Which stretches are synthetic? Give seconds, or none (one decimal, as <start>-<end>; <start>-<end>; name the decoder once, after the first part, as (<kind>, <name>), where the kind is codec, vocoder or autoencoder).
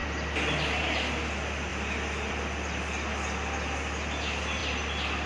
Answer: 0.0-0.8 (vocoder, BigVGAN v2); 1.7-2.3; 4.6-5.3